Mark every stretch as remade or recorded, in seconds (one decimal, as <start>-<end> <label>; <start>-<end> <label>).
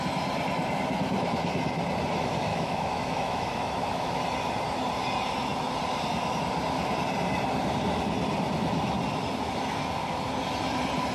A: 0.0-2.5 recorded; 2.5-4.2 remade; 4.2-11.1 recorded